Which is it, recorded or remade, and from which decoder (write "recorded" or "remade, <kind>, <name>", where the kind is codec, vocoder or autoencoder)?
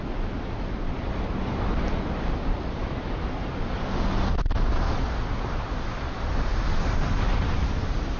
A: recorded